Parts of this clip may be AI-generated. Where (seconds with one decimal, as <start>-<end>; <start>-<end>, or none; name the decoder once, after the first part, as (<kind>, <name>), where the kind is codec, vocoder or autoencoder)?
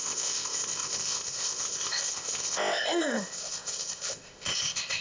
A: 0.0-5.0 (codec, ZipCodec)